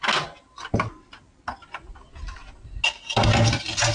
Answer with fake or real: real